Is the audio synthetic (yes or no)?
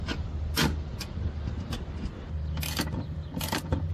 no